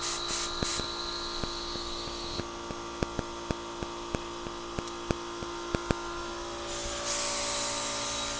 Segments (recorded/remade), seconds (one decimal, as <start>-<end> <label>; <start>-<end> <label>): 0.0-8.4 recorded